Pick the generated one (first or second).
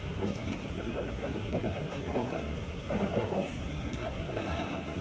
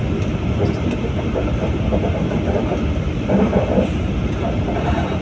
first